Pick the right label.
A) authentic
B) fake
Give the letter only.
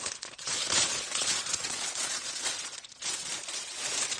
B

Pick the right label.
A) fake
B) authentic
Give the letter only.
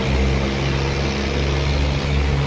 B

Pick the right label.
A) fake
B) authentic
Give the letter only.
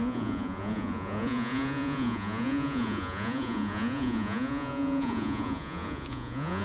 A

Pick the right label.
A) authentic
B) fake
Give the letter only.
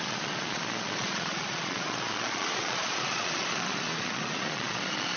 B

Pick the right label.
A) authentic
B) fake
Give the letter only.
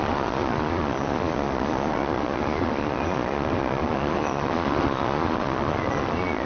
B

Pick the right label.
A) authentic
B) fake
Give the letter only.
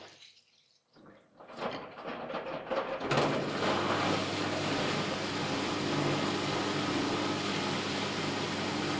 A